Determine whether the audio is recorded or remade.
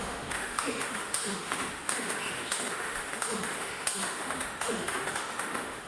remade